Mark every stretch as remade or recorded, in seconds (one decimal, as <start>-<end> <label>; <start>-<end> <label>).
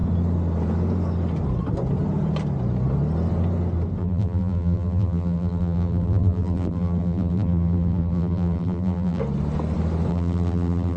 0.0-4.0 recorded; 4.0-9.2 remade; 9.2-10.1 recorded; 10.1-11.0 remade